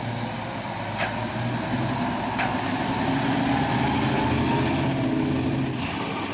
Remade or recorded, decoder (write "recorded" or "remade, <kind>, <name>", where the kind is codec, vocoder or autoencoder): recorded